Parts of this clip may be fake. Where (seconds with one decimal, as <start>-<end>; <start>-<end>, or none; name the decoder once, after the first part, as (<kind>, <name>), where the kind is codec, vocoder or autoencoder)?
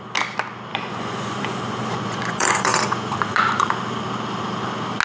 0.7-3.7 (vocoder, Vocos)